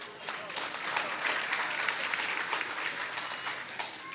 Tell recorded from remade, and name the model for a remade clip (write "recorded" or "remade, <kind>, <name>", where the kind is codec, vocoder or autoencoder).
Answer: recorded